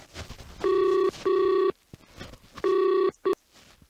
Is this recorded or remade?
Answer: recorded